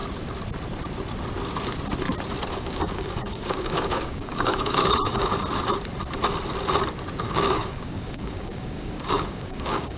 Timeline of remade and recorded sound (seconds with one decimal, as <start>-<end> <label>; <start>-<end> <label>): 0.0-2.5 recorded; 2.5-5.3 remade; 5.3-7.2 recorded; 7.2-10.0 remade